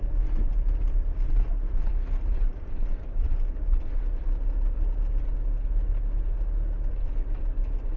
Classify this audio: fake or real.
real